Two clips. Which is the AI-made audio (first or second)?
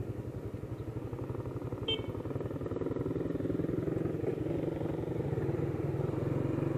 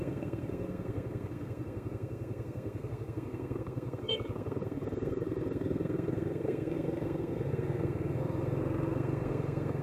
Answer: second